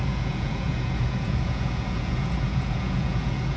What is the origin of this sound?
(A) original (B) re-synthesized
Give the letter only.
B